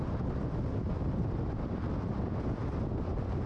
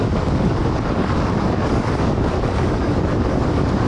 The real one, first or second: first